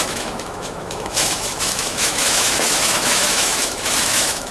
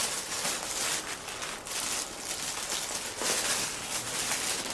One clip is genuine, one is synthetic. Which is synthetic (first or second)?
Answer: first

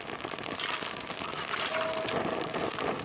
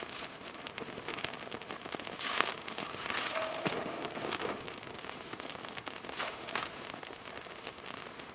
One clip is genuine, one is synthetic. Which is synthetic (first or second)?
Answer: second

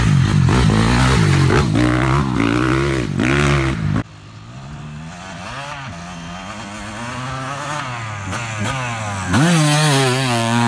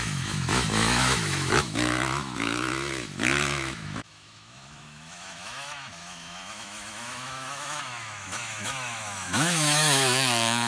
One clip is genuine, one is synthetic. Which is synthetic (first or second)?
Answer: second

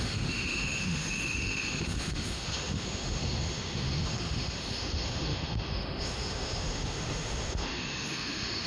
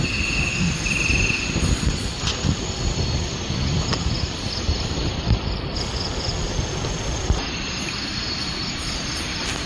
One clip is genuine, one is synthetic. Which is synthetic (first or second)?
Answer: first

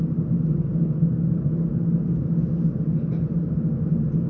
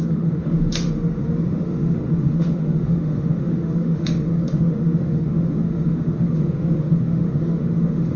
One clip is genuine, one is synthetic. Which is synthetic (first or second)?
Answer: second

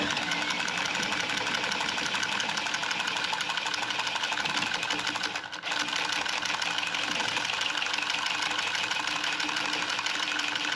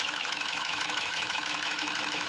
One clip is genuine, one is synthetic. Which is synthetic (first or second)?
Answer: second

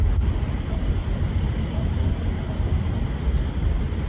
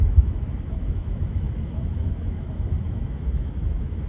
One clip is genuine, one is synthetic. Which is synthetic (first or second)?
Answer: second